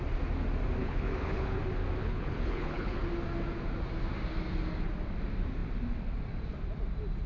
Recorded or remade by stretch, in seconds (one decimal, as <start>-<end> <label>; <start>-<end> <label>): 0.0-0.8 recorded; 0.8-1.6 remade; 1.6-2.0 recorded; 2.0-3.0 remade; 3.0-7.3 recorded